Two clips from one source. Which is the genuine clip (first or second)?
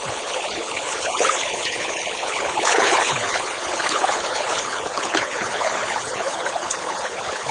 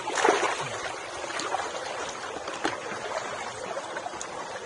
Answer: second